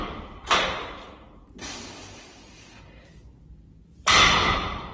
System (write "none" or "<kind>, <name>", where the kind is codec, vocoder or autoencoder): none